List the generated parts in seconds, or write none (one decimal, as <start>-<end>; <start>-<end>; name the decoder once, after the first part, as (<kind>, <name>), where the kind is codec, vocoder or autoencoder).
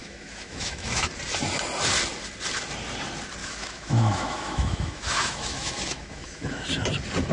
0.0-1.1 (autoencoder, DAC-VAE); 3.4-6.7